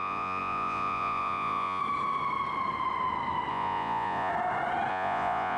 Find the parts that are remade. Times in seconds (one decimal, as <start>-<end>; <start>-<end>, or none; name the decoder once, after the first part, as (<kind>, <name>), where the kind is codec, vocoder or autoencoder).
0.0-1.8 (vocoder, Vocos); 3.5-4.3; 4.9-5.6